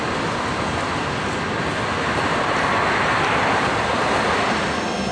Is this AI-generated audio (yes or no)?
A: no